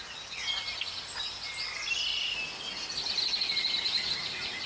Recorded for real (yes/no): yes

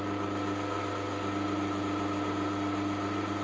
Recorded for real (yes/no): yes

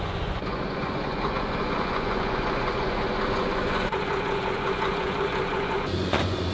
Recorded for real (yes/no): no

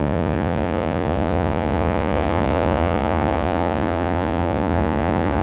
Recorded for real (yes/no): no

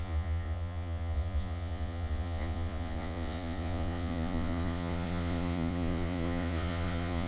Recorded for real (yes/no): no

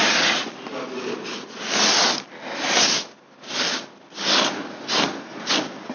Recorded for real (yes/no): yes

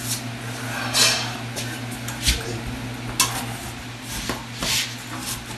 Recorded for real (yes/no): yes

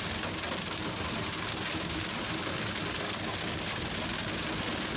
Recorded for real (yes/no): yes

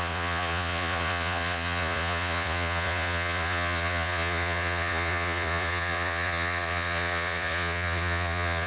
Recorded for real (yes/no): no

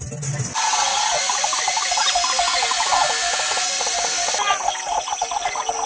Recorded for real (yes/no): yes